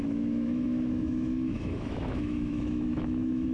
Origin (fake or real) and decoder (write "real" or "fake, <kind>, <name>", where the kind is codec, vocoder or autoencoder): fake, autoencoder, DAC-VAE